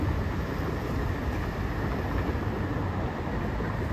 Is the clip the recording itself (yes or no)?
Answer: yes